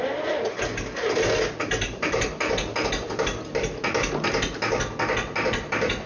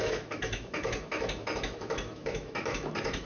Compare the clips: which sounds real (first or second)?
first